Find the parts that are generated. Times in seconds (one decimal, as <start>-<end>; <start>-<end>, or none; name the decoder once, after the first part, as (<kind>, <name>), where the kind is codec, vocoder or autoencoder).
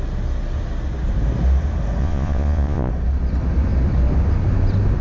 2.0-2.9 (vocoder, Vocos)